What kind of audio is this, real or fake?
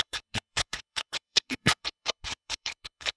fake